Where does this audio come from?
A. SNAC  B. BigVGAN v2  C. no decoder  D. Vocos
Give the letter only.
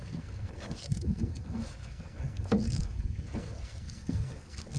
A